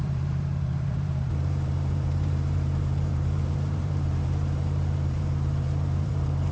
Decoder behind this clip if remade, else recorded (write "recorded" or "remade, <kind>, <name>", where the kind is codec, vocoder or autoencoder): remade, vocoder, BigVGAN v2